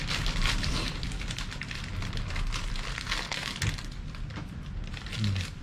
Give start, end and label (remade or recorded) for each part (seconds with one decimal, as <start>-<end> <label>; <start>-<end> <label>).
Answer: 0.0-2.9 recorded; 2.9-3.5 remade; 3.5-5.6 recorded